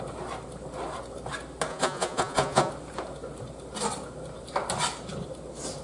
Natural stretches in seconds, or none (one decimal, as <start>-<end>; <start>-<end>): 0.0-1.7; 2.7-5.8